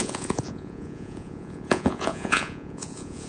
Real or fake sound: fake